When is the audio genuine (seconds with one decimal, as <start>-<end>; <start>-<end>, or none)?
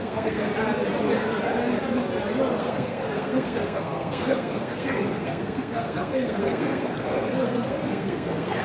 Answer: 0.5-2.6